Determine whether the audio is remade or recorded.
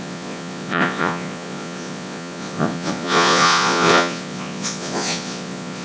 remade